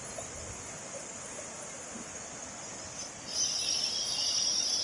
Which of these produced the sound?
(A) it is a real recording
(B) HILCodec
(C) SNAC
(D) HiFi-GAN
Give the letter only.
A